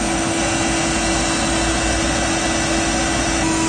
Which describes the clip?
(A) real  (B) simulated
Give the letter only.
A